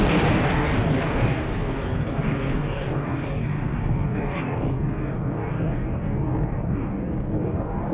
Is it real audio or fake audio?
fake